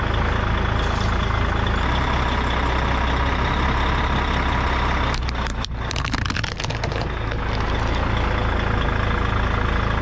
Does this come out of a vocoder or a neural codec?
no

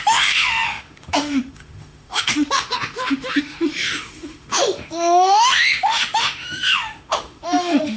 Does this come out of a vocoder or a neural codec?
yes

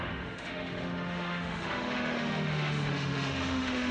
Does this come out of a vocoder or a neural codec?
yes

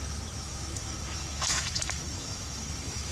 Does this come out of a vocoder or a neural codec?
yes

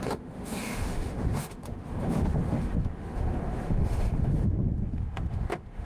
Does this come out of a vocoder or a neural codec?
yes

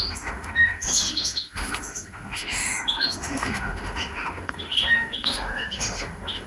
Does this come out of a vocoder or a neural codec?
yes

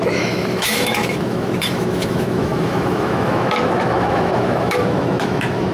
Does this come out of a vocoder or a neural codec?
yes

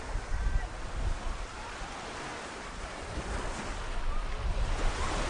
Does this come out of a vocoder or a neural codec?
no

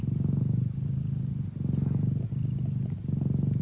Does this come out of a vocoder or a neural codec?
no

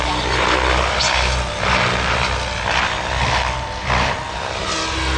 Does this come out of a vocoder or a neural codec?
no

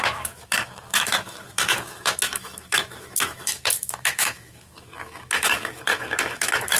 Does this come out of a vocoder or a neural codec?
yes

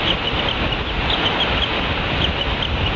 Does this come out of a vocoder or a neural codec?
no